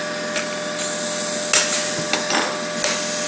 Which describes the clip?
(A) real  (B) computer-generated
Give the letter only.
A